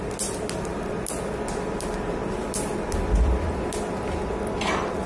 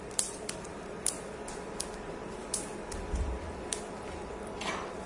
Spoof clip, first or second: second